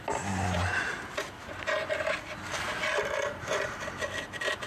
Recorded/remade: recorded